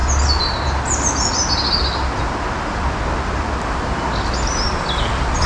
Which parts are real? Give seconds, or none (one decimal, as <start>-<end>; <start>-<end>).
0.0-5.5